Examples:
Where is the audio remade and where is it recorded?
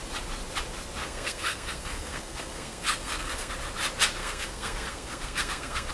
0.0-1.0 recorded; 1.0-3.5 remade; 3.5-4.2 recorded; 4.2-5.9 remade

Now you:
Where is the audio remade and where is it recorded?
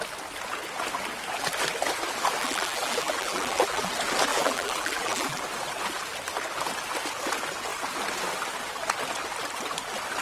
0.0-2.4 recorded; 2.4-3.9 remade; 3.9-4.3 recorded; 4.3-5.4 remade; 5.4-10.2 recorded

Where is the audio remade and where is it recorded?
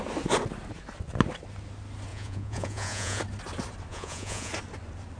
0.0-2.1 recorded; 2.1-3.2 remade; 3.2-3.9 recorded; 3.9-4.5 remade; 4.5-5.2 recorded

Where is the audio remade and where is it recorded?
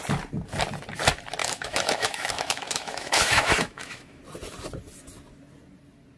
0.0-1.4 recorded; 1.4-4.2 remade; 4.2-6.2 recorded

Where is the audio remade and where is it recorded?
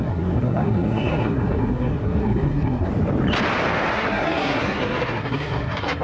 0.0-2.9 remade; 2.9-3.9 recorded; 3.9-6.0 remade